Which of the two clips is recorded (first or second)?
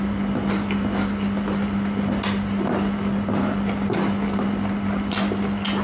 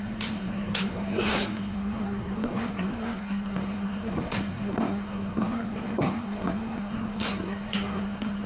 first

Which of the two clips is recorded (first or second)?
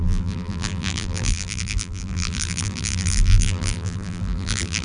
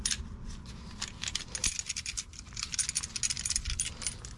second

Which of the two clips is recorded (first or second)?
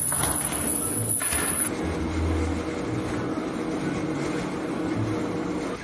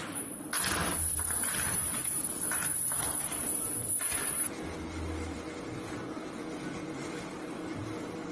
first